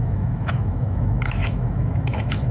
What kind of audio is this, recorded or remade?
remade